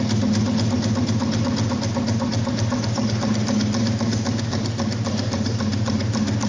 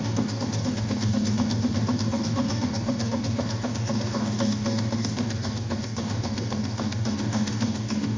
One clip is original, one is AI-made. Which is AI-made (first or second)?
second